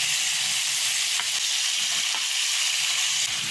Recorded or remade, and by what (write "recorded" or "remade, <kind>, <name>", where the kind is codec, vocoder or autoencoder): recorded